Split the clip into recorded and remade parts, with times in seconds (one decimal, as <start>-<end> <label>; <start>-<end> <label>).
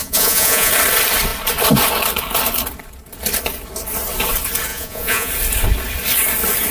0.0-0.7 remade; 0.7-4.7 recorded; 4.7-5.3 remade; 5.3-6.7 recorded